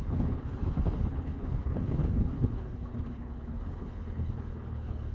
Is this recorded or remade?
remade